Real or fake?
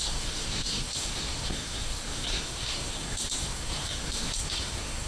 fake